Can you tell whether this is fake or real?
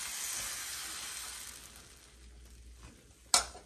real